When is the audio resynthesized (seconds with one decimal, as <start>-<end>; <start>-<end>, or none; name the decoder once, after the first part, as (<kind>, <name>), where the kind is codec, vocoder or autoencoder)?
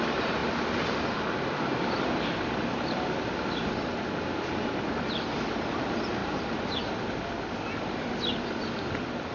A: 6.2-6.8 (vocoder, BigVGAN v2)